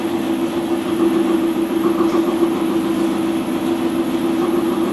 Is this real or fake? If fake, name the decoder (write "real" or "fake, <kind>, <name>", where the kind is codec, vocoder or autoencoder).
real